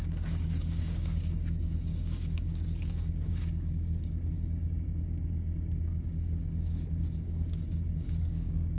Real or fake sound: fake